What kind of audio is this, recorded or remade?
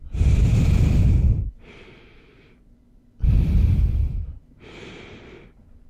remade